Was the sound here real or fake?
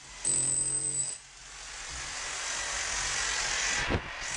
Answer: real